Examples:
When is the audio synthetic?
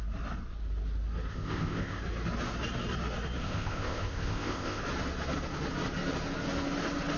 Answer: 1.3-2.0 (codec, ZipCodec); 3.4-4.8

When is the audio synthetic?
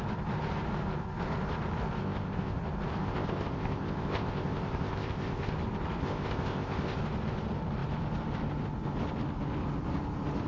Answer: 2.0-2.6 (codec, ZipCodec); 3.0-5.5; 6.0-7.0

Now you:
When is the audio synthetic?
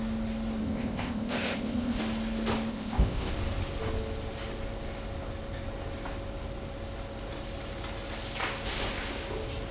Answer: 0.6-2.0 (codec, ZipCodec); 2.7-3.3